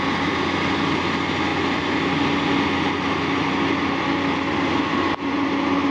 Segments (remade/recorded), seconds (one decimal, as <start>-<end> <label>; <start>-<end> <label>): 0.0-5.9 recorded

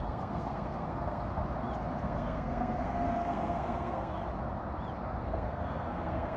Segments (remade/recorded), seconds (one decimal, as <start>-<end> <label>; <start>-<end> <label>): 0.0-1.4 remade; 1.4-2.0 recorded; 2.0-4.2 remade; 4.2-5.2 recorded; 5.2-6.4 remade

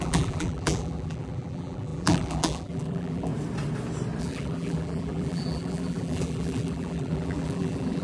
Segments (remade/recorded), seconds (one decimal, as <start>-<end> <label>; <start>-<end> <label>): 0.0-3.3 remade; 3.3-4.2 recorded; 4.2-8.0 remade

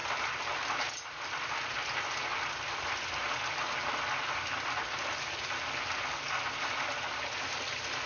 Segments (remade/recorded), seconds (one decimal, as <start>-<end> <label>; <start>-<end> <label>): 0.0-8.1 recorded

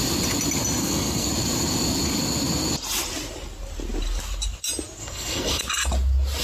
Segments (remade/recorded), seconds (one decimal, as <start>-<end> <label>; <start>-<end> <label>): 0.0-0.8 recorded; 0.8-1.3 remade; 1.3-5.0 recorded; 5.0-5.6 remade; 5.6-6.4 recorded

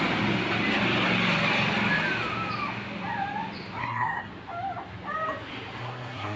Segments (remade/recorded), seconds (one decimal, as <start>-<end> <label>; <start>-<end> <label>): 0.0-3.8 recorded; 3.8-4.3 remade; 4.3-5.8 recorded; 5.8-6.4 remade

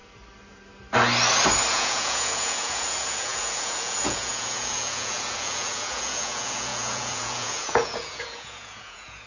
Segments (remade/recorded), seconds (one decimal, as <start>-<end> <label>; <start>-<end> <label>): 0.0-1.7 recorded; 1.7-9.3 remade